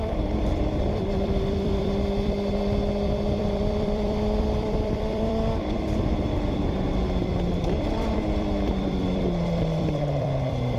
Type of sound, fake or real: fake